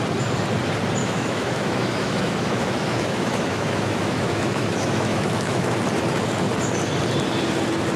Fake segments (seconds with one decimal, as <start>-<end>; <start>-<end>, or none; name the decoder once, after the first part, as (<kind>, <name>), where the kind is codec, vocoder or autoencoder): 1.0-5.8 (autoencoder, DAC-VAE)